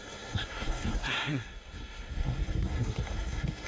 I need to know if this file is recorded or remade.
remade